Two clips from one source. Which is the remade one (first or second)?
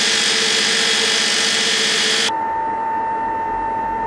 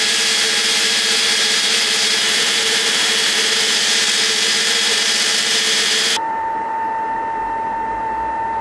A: second